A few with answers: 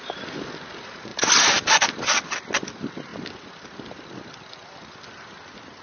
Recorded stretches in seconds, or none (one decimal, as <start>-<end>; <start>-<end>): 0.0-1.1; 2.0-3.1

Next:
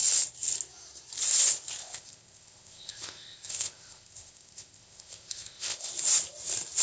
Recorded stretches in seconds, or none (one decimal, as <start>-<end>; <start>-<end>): 0.0-1.8; 5.9-6.8

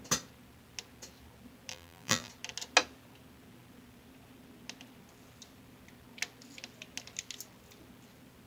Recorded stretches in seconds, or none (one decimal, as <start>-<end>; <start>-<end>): 0.0-1.7; 2.3-8.5